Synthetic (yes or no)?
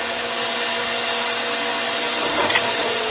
no